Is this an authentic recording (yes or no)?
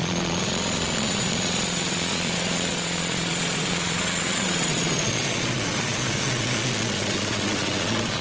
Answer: no